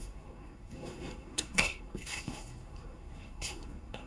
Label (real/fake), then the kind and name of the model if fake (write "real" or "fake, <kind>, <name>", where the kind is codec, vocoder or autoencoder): fake, codec, SNAC